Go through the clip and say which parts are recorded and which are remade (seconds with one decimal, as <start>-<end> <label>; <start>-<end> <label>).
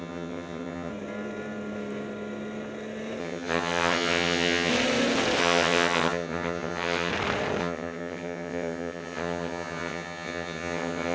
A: 0.0-0.9 remade; 0.9-3.2 recorded; 3.2-4.7 remade; 4.7-5.4 recorded; 5.4-7.1 remade; 7.1-7.6 recorded; 7.6-11.1 remade